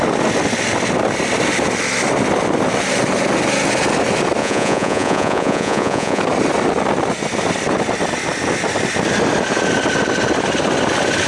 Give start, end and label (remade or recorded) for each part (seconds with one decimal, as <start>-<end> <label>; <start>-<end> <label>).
0.0-4.4 recorded; 4.4-6.2 remade; 6.2-11.3 recorded